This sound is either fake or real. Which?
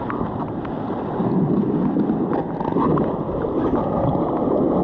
real